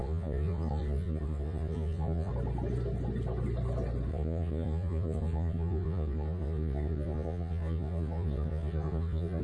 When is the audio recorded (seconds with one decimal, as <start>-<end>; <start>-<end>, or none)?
2.3-4.1